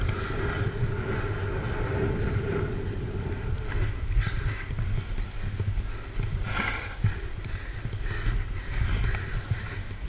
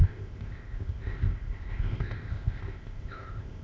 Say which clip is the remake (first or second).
second